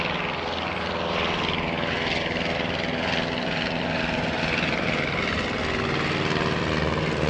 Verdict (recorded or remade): recorded